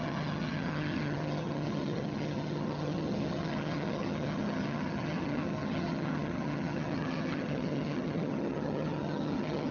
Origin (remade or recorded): remade